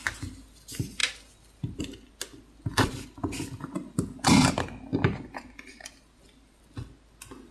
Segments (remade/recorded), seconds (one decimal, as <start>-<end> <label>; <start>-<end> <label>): 0.0-7.5 recorded